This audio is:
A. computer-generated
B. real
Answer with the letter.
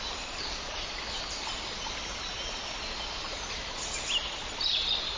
B